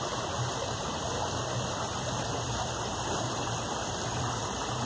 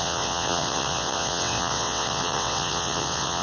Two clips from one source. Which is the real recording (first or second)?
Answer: first